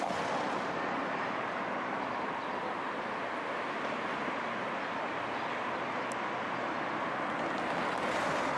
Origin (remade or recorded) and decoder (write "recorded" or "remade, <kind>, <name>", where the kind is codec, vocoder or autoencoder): recorded